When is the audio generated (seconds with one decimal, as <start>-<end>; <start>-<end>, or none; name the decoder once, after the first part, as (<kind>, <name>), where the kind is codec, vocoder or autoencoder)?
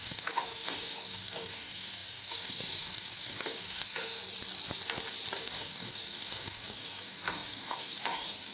0.0-4.2 (codec, DAC); 5.4-8.5